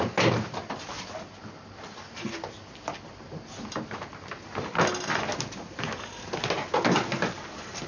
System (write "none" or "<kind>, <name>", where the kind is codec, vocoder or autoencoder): none